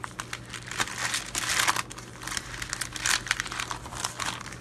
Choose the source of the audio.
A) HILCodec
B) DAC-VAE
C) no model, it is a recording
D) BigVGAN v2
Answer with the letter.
C